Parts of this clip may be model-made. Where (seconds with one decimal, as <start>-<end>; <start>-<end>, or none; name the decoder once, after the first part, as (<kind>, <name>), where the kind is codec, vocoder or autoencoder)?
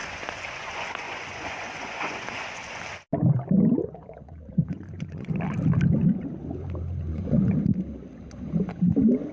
0.0-2.8 (vocoder, Vocos); 3.8-5.3; 7.1-7.6